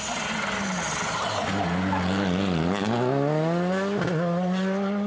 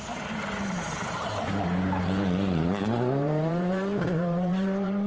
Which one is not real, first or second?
second